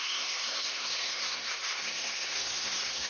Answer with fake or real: fake